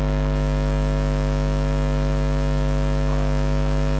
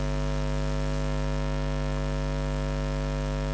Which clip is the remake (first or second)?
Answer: first